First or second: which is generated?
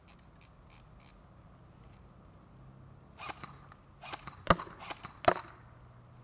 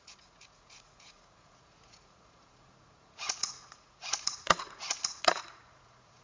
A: second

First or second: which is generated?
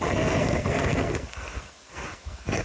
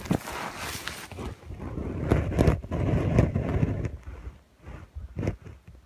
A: first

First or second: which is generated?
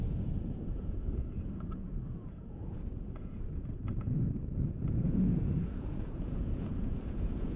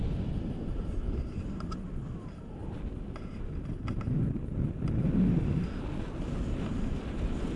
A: first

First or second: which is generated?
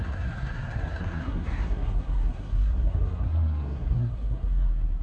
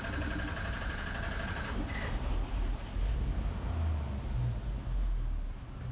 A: first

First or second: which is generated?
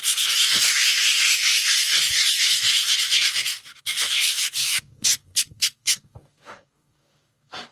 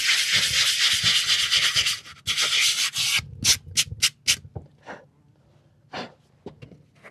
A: first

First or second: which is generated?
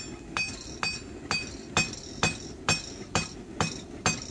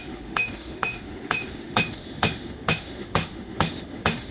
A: second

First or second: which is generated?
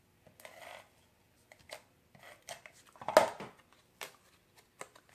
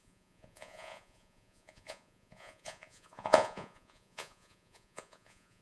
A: second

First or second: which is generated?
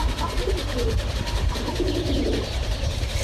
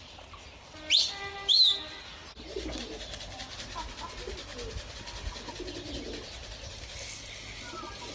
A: first